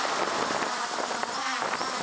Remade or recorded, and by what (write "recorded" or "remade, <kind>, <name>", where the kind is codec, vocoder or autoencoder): recorded